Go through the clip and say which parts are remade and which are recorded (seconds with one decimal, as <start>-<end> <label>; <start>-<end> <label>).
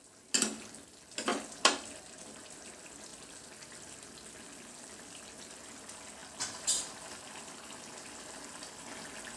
0.0-9.4 recorded